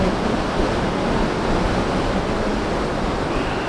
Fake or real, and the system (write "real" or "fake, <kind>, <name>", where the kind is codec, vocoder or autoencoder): real